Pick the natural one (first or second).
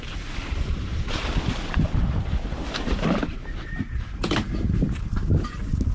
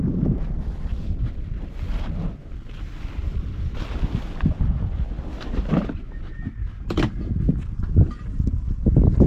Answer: second